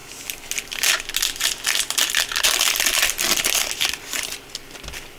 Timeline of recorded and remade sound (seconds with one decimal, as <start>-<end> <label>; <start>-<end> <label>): 0.0-5.2 recorded